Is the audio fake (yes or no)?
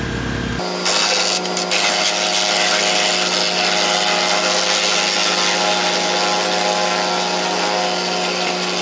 no